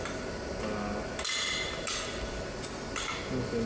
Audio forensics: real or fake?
real